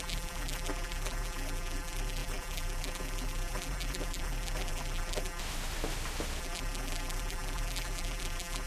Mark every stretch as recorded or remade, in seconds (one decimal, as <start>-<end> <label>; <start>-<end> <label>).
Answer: 0.0-5.4 remade; 5.4-6.4 recorded; 6.4-8.7 remade